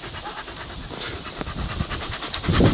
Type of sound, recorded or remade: recorded